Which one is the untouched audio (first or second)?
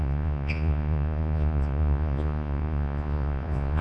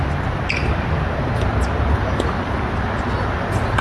second